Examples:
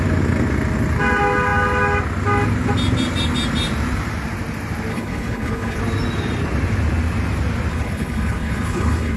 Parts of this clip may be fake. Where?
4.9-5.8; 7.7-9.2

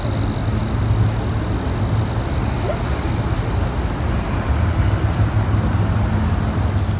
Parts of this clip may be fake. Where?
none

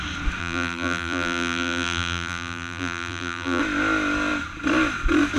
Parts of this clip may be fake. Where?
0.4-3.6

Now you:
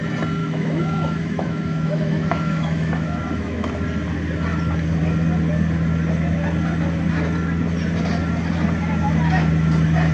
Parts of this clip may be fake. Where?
0.4-3.7

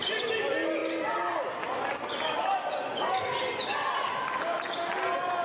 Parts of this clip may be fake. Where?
none

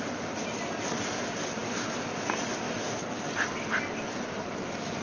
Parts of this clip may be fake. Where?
none

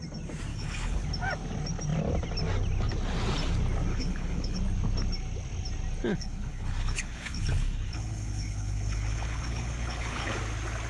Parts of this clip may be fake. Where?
0.5-1.0; 3.9-4.6; 6.1-10.4

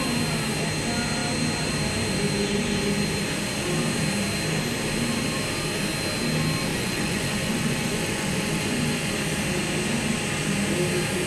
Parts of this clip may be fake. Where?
6.7-9.1